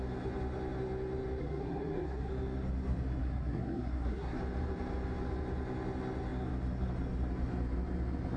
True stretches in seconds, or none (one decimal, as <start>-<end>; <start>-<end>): 0.0-1.4; 2.3-3.2; 4.4-8.4